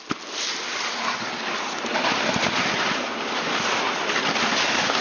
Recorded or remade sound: recorded